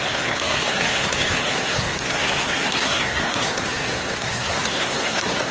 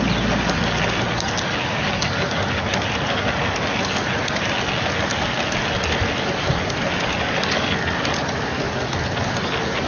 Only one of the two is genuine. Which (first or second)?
second